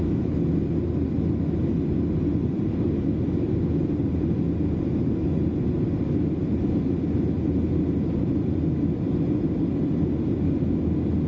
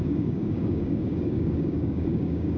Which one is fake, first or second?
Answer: second